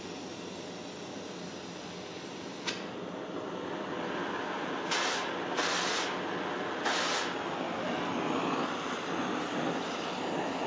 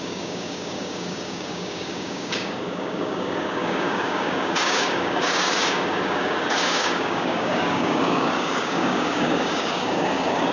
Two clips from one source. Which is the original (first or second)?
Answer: first